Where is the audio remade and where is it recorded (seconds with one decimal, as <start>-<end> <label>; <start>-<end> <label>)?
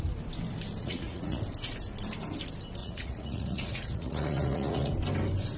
0.0-0.8 recorded; 0.8-1.4 remade; 1.4-2.8 recorded; 2.8-4.9 remade; 4.9-5.6 recorded